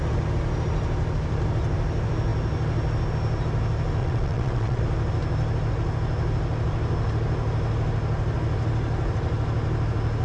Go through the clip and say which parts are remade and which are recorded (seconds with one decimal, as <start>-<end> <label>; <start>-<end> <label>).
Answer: 0.0-4.0 recorded; 4.0-4.8 remade; 4.8-10.2 recorded